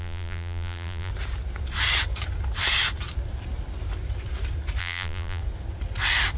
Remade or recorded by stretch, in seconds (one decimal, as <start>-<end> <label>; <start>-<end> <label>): 0.0-1.1 remade; 1.1-4.8 recorded; 4.8-5.4 remade; 5.4-6.4 recorded

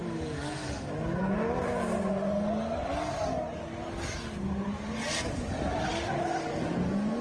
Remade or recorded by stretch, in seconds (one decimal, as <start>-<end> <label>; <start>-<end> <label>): 0.0-7.2 recorded

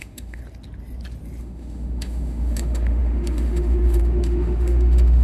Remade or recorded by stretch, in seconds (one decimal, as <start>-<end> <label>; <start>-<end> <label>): 0.0-0.4 remade; 0.4-1.4 recorded; 1.4-5.2 remade

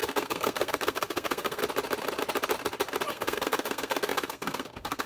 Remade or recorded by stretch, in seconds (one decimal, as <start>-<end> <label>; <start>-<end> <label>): 0.0-1.6 remade; 1.6-3.1 recorded; 3.1-5.1 remade

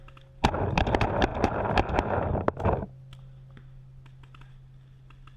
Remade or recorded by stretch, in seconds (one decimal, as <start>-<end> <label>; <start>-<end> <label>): 0.0-5.4 recorded

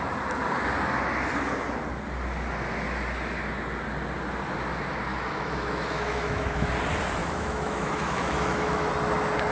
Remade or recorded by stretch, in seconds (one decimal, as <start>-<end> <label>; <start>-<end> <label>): 0.0-5.1 recorded; 5.1-6.7 remade; 6.7-7.2 recorded; 7.2-8.9 remade; 8.9-9.5 recorded

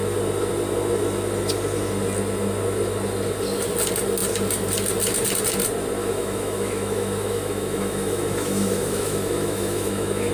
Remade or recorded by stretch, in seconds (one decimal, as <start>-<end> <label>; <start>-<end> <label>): 0.0-6.0 recorded; 6.0-10.3 remade

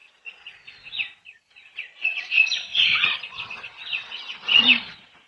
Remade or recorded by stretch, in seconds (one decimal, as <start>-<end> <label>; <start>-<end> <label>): 0.0-5.3 remade